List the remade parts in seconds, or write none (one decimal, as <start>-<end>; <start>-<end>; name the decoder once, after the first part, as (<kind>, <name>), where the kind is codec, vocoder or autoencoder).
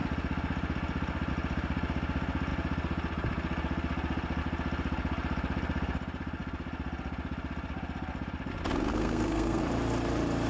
8.9-9.6 (codec, SNAC)